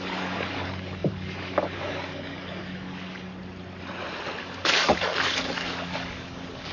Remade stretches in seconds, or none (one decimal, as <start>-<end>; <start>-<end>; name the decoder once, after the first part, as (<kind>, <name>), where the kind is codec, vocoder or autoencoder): 0.0-3.3 (codec, DAC); 4.4-6.7